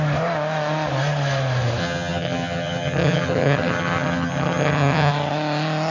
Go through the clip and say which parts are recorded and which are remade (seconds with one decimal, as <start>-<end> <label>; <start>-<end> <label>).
0.0-1.8 recorded; 1.8-5.1 remade; 5.1-5.9 recorded